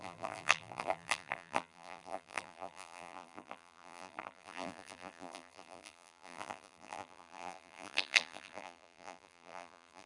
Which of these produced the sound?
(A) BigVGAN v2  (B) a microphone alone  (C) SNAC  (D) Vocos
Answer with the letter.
A